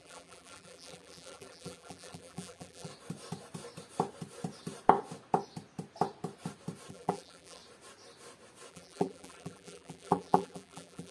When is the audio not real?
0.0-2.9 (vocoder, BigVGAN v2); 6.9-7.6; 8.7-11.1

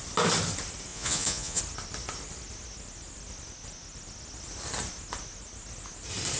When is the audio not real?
0.9-1.6 (vocoder, Vocos)

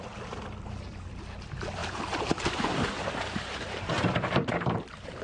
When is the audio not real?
1.8-5.2 (vocoder, BigVGAN v2)

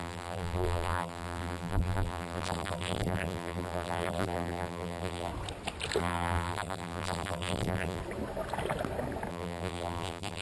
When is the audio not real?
0.0-5.3 (vocoder, BigVGAN v2); 6.0-8.0; 9.3-10.4

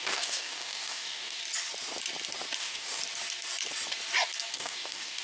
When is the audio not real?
0.0-1.4 (codec, DAC); 2.6-3.0; 4.5-5.2

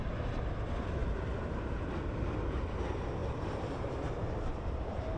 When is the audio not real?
3.2-5.2 (vocoder, BigVGAN v2)

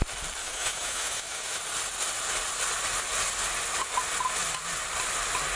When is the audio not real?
0.4-1.6 (autoencoder, DAC-VAE)

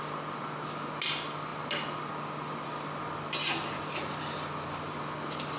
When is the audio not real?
none